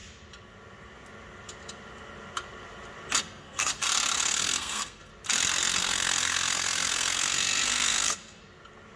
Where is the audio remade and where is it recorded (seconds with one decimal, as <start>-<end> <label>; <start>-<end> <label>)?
0.0-3.2 recorded; 3.2-3.7 remade; 3.7-4.2 recorded; 4.2-5.1 remade; 5.1-5.8 recorded; 5.8-8.4 remade; 8.4-9.0 recorded